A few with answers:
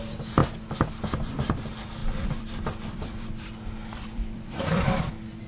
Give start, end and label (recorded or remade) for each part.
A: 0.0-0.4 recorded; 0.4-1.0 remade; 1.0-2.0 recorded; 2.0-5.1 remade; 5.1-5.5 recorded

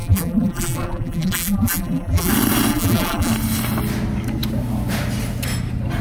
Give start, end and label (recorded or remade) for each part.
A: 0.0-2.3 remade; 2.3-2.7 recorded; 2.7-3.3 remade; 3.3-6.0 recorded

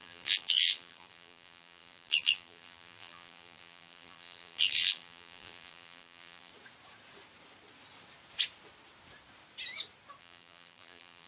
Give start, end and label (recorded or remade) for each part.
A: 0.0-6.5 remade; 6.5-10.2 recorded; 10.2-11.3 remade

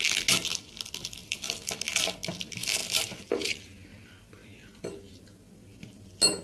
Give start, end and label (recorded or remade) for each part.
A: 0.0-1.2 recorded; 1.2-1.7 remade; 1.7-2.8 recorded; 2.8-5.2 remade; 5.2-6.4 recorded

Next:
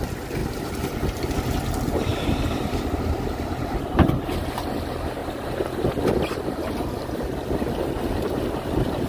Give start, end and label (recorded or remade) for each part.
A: 0.0-0.4 recorded; 0.4-1.2 remade; 1.2-2.1 recorded; 2.1-4.1 remade; 4.1-5.2 recorded; 5.2-5.7 remade; 5.7-9.1 recorded

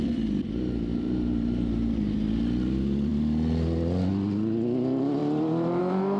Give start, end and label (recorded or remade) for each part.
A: 0.0-0.9 recorded; 0.9-2.3 remade; 2.3-6.2 recorded

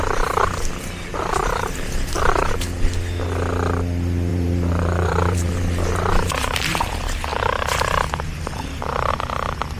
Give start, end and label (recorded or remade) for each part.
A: 0.0-1.1 recorded; 1.1-2.5 remade; 2.5-4.3 recorded; 4.3-6.8 remade; 6.8-7.3 recorded; 7.3-9.1 remade; 9.1-9.8 recorded

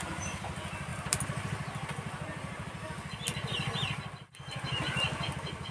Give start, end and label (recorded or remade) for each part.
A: 0.0-5.7 recorded